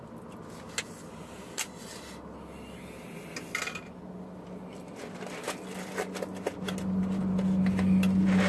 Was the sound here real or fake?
real